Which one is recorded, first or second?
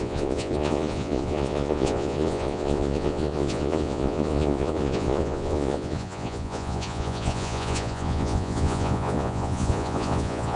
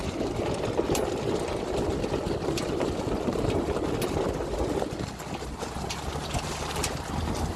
second